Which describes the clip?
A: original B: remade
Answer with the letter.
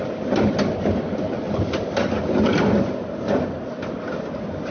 A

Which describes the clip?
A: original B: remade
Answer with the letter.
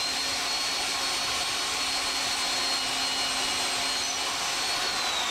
A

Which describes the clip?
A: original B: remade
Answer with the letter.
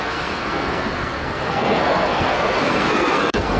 B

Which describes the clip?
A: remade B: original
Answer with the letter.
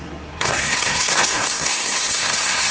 A